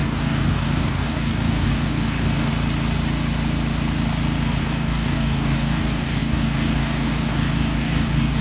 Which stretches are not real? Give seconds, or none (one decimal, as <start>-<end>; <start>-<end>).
0.0-2.5; 4.6-8.4